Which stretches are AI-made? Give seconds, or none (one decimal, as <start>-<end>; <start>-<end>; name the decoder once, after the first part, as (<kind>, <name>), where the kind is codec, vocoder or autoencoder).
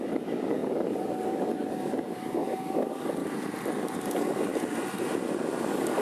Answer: 0.0-3.2 (codec, DAC); 4.1-4.5; 5.6-6.0